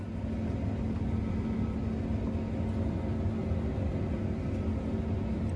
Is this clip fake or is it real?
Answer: real